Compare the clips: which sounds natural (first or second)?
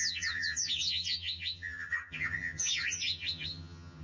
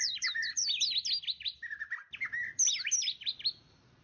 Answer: second